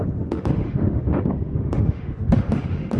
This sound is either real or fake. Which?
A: fake